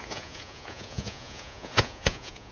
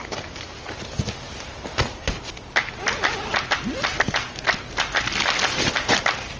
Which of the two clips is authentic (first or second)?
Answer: second